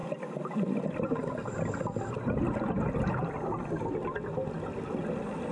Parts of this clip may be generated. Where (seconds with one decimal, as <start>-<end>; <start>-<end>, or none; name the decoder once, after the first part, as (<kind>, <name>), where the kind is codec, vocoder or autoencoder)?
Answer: none